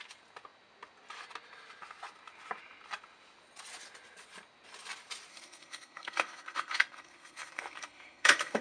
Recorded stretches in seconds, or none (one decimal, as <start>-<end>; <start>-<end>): 0.0-5.3